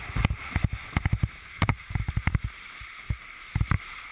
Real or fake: real